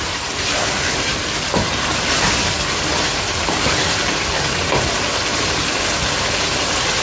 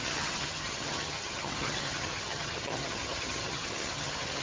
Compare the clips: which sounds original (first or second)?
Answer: first